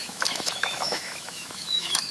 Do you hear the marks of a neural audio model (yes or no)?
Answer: yes